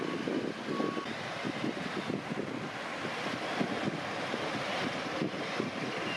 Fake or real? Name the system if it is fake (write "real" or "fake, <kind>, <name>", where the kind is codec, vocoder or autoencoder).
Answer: real